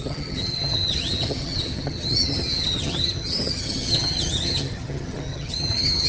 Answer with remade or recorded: remade